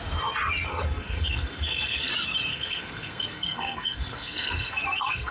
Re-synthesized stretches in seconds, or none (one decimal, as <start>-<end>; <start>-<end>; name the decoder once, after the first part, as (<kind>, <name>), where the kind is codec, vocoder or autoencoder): 0.7-2.1 (codec, SNAC); 2.5-5.3